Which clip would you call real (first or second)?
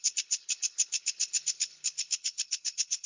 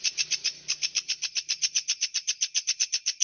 second